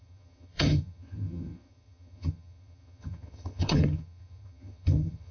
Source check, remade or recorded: remade